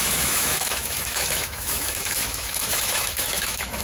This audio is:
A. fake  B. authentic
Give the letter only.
A